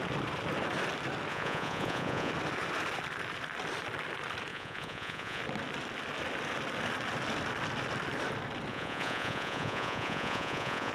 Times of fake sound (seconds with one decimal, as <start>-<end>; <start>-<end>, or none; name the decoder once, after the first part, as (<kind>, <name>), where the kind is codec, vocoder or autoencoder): 1.3-2.3 (vocoder, Vocos); 4.5-5.4; 8.7-10.9